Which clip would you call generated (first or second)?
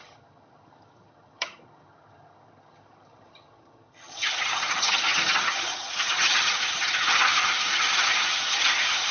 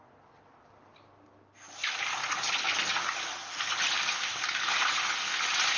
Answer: first